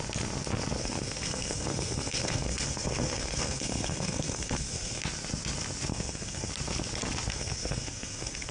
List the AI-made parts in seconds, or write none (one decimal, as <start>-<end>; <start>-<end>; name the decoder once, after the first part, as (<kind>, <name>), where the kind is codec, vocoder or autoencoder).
0.8-5.0 (codec, SNAC); 5.9-6.5; 7.3-8.5

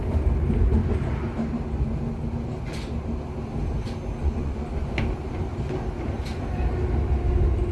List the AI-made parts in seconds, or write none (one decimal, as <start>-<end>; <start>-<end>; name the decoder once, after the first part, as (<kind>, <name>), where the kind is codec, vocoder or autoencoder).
4.2-5.0 (vocoder, Vocos)